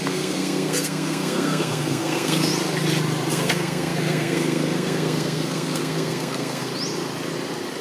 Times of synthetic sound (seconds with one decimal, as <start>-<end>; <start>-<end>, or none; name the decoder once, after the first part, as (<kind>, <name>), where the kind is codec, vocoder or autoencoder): 0.0-2.5 (codec, SNAC); 3.3-6.7